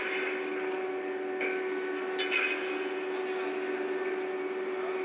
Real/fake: real